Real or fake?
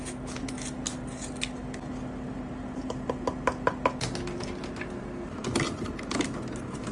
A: real